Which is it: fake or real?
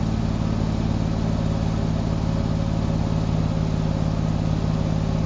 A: real